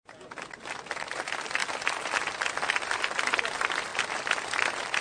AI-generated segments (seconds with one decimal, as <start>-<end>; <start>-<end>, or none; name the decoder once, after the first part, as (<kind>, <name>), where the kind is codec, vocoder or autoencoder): none